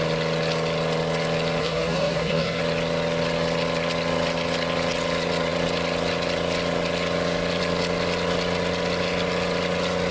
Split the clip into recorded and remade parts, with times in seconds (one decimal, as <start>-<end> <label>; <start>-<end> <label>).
0.0-1.6 recorded; 1.6-2.6 remade; 2.6-10.1 recorded